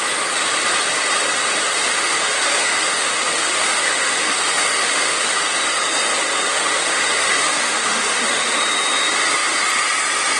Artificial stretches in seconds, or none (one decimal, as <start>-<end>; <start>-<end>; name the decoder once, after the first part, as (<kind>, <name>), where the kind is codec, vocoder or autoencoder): 1.7-5.4 (autoencoder, DAC-VAE); 6.5-8.6